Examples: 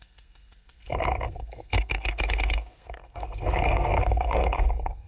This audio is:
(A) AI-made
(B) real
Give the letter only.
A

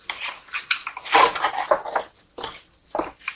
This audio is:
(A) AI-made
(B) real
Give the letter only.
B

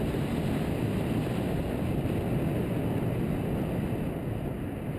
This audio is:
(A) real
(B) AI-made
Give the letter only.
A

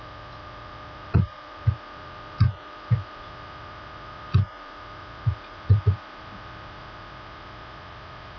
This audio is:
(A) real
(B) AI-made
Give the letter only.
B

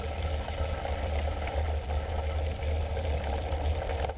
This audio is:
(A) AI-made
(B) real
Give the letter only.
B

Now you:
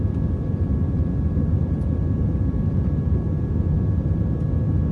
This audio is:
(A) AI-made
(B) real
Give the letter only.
B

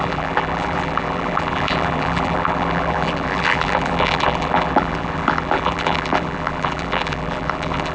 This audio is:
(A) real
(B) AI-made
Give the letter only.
B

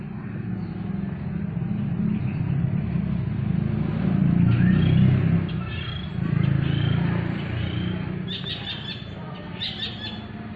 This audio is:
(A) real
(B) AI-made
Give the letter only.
A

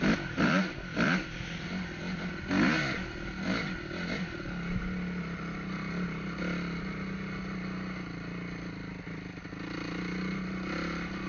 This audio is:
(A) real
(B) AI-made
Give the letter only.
A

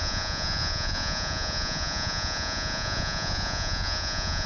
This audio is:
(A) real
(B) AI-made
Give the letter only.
B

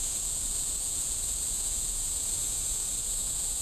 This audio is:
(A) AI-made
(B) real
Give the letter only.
A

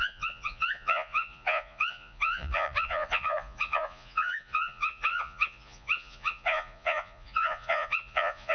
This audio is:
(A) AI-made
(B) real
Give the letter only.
A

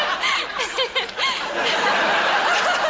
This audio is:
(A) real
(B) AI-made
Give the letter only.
A